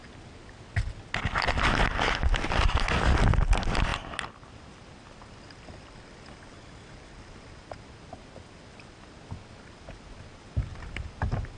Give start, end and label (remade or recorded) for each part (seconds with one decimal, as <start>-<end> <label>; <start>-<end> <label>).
0.0-11.6 recorded